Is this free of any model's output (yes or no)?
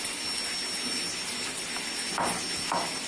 yes